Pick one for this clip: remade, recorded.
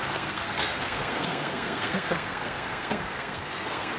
remade